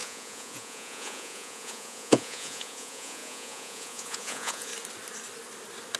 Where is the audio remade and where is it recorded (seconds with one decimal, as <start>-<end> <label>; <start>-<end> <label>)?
0.0-4.7 remade; 4.7-6.0 recorded